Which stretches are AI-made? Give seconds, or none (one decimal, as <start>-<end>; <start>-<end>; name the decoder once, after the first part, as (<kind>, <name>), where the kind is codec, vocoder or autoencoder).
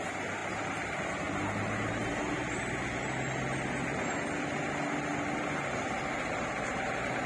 none